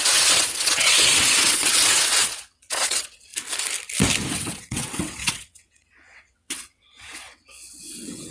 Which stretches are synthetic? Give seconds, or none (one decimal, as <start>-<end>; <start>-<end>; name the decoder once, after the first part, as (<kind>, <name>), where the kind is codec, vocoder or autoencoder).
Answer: 0.0-3.3 (vocoder, WaveNeXt); 4.3-8.3